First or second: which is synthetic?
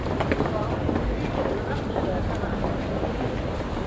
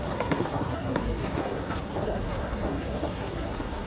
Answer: second